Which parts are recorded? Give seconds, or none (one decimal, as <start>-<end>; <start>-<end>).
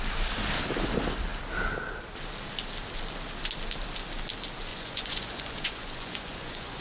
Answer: 0.0-4.7